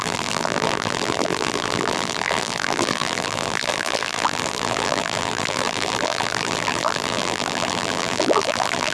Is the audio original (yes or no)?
no